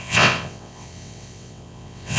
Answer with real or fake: fake